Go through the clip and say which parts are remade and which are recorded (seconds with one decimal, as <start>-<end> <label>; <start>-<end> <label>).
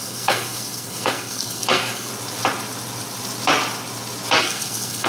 0.0-2.1 remade; 2.1-4.4 recorded; 4.4-5.1 remade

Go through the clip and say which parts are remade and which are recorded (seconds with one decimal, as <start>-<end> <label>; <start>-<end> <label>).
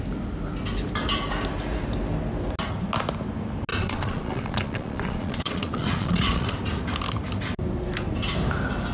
0.0-3.7 recorded; 3.7-6.5 remade; 6.5-8.9 recorded